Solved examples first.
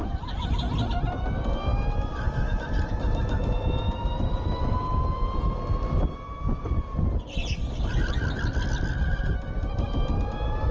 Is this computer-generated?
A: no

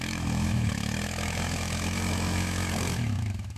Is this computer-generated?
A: yes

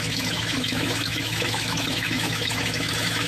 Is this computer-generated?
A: yes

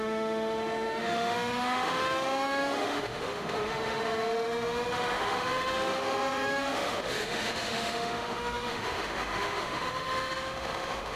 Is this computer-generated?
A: yes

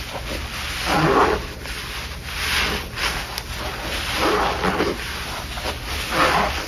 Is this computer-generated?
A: no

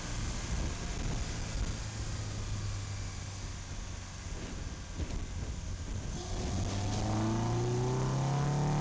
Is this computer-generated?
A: no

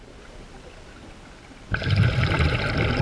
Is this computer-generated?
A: no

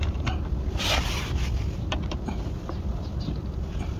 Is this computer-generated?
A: no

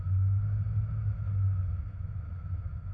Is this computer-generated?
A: yes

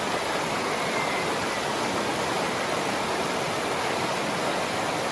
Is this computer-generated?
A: no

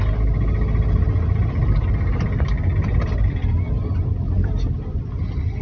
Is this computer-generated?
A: no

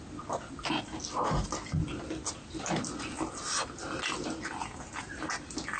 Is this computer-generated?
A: no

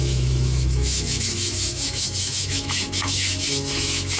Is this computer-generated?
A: yes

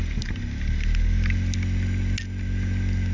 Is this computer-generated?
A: no